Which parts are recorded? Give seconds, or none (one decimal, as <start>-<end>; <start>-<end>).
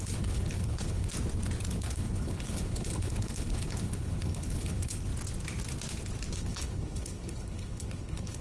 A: 1.1-1.7; 5.1-6.3